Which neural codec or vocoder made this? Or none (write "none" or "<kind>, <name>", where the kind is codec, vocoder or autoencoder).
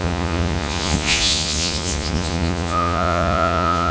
vocoder, Vocos